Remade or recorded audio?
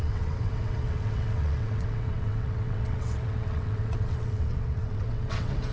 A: remade